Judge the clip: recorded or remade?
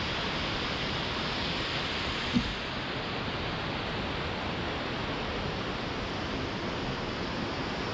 recorded